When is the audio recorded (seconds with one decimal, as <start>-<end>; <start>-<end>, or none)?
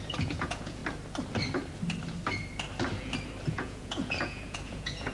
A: 0.8-3.5